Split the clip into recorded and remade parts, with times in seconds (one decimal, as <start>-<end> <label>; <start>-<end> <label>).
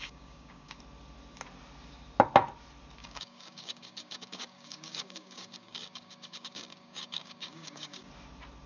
0.0-0.8 remade; 0.8-3.0 recorded; 3.0-8.1 remade; 8.1-8.7 recorded